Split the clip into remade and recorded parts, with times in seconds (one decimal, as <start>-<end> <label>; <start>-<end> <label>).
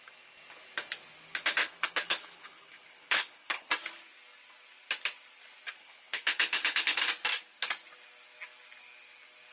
0.0-1.6 recorded; 1.6-3.7 remade; 3.7-5.8 recorded; 5.8-7.0 remade; 7.0-9.5 recorded